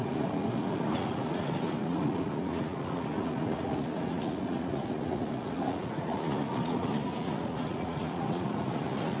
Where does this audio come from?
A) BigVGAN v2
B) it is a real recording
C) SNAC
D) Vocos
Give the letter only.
D